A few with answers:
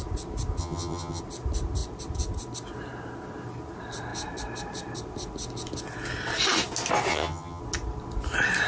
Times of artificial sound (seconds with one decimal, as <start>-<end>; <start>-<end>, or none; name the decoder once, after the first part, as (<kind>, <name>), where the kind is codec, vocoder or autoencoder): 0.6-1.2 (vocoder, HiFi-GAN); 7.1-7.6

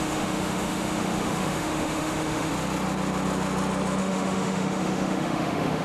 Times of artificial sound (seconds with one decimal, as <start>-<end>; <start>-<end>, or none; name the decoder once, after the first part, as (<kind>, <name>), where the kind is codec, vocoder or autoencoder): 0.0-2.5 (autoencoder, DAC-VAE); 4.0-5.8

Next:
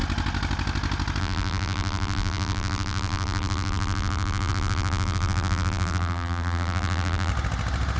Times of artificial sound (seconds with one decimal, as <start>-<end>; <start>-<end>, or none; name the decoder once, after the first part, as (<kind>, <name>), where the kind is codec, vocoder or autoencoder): 1.2-7.3 (vocoder, BigVGAN v2)

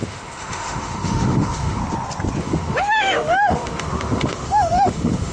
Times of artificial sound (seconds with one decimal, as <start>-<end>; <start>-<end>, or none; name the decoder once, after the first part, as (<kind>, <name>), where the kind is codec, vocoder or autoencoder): 0.0-1.8 (autoencoder, DAC-VAE); 2.4-5.3

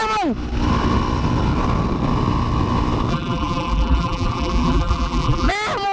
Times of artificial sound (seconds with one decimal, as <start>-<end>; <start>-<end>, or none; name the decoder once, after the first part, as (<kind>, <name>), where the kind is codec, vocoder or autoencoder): 3.1-5.5 (vocoder, BigVGAN v2)

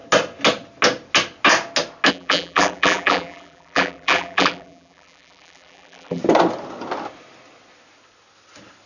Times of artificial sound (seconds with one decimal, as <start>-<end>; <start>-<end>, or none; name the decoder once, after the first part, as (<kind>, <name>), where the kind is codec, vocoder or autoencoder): 2.1-6.2 (vocoder, BigVGAN v2)

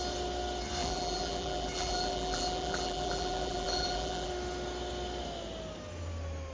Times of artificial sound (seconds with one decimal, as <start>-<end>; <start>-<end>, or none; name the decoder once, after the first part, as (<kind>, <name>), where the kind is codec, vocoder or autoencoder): 0.8-4.3 (vocoder, BigVGAN v2)